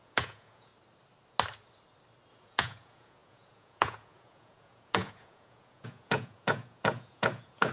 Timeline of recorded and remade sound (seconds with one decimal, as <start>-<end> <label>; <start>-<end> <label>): 0.0-0.7 remade; 0.7-2.3 recorded; 2.3-7.7 remade